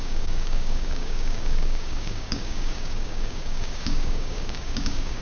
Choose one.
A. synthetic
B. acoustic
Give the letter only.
A